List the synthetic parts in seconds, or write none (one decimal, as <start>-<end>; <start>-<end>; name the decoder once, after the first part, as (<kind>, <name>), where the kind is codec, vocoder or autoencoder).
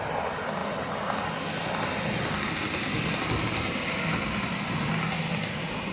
none